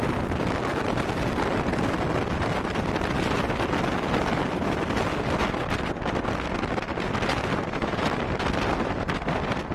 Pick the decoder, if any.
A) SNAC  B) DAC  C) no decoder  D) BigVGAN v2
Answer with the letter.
C